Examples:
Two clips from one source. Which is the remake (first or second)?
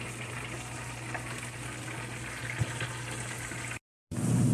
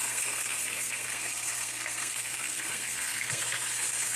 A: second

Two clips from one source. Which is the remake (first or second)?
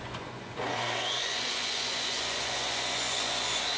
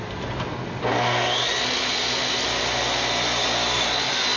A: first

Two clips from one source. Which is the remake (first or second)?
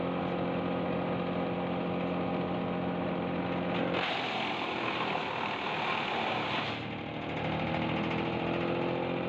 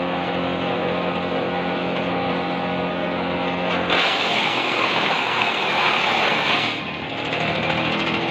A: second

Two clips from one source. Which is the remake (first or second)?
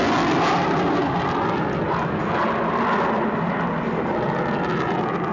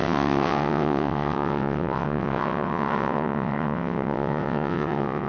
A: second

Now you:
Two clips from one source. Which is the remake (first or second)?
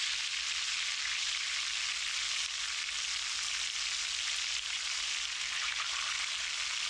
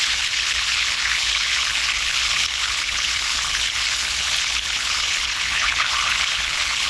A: second